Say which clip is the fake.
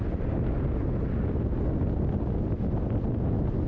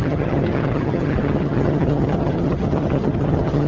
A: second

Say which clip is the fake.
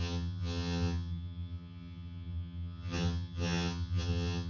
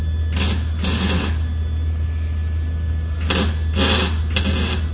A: first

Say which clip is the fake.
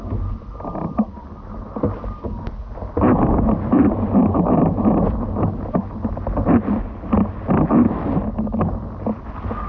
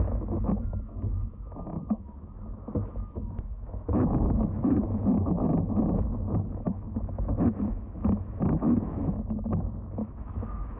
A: second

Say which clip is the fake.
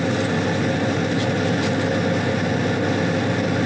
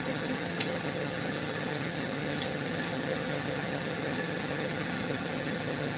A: second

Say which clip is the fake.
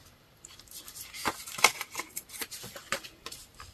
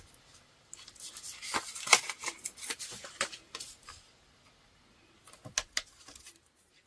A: first